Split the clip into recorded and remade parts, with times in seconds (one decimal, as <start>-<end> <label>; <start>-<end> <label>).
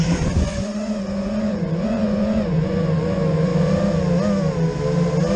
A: 0.0-3.5 remade; 3.5-5.4 recorded